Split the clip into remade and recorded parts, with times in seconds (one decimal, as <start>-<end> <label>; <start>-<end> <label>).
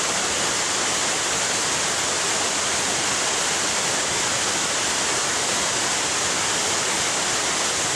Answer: 0.0-8.0 recorded